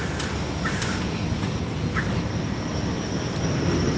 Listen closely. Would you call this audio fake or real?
real